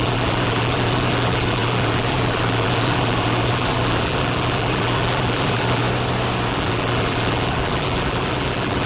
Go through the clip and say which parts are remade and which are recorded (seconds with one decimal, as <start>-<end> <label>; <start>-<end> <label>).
0.0-5.8 remade; 5.8-6.5 recorded; 6.5-8.9 remade